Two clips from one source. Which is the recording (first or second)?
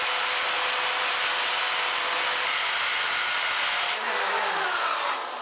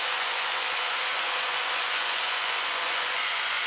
first